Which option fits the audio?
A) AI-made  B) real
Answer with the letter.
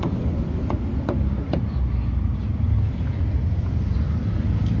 B